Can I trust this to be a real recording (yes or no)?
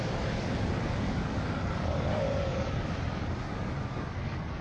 no